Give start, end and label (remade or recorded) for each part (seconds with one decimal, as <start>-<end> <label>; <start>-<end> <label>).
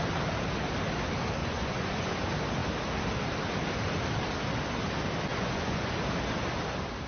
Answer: 0.0-1.4 recorded; 1.4-2.1 remade; 2.1-5.3 recorded; 5.3-5.9 remade; 5.9-7.1 recorded